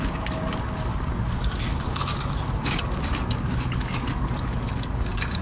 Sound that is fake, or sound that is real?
fake